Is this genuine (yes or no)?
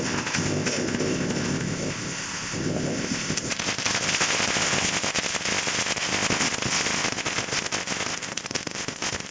no